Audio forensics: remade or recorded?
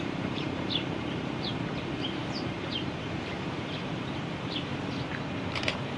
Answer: remade